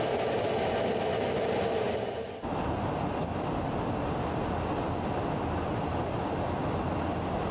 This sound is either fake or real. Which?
real